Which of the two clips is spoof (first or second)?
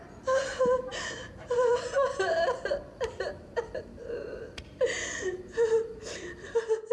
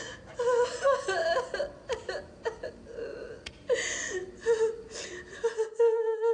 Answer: first